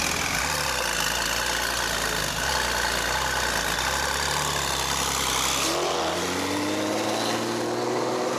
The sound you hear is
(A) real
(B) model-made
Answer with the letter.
A